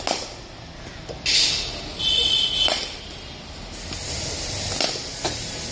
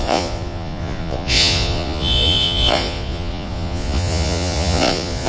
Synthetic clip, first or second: second